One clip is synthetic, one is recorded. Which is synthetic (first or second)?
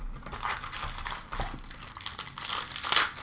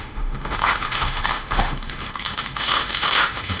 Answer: second